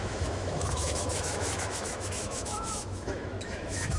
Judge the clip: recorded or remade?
remade